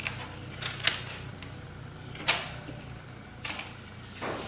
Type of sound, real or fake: real